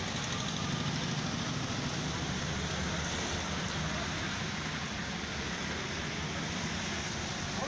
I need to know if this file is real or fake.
real